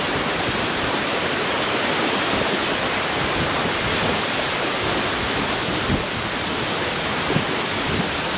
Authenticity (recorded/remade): recorded